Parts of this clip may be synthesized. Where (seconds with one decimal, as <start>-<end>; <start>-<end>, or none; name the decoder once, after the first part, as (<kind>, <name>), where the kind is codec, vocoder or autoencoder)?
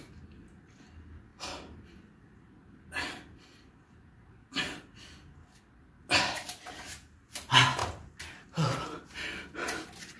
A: none